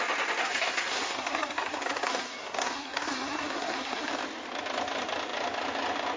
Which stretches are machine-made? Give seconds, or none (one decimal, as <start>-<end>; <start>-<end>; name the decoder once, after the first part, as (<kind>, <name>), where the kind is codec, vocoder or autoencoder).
0.4-4.1 (codec, SNAC)